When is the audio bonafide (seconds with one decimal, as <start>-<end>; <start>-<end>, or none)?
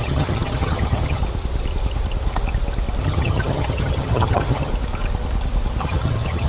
1.2-3.0; 4.7-5.8